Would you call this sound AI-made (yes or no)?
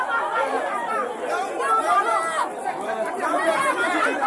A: no